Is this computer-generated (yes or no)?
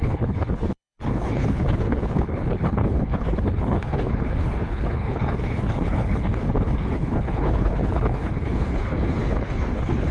yes